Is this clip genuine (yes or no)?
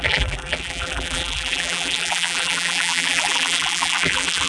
no